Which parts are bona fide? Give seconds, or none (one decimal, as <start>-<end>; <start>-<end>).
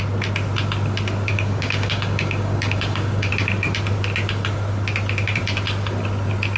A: 0.0-1.3; 3.3-6.6